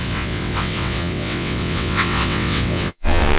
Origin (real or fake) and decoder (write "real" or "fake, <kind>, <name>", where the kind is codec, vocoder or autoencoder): fake, vocoder, WaveNeXt